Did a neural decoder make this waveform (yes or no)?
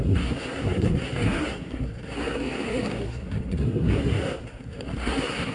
yes